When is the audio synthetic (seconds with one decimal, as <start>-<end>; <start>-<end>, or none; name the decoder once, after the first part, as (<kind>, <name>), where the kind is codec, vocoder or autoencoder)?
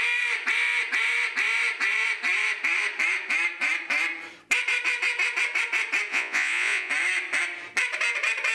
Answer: 6.1-6.9 (vocoder, Vocos)